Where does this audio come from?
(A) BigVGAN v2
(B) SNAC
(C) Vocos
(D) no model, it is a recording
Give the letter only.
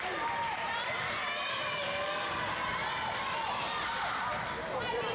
D